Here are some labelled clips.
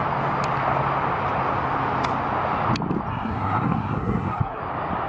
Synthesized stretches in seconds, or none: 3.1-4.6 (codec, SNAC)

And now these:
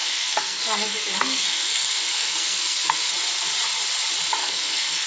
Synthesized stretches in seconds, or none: 0.0-3.1 (codec, SNAC); 4.4-5.1

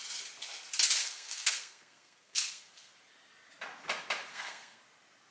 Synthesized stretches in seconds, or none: 1.0-2.9 (codec, SNAC); 4.3-4.8

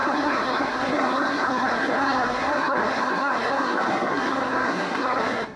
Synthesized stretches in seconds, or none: 0.0-5.6 (codec, SNAC)

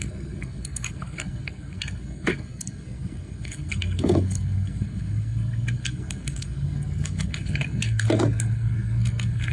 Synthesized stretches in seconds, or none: 0.0-9.5 (codec, SNAC)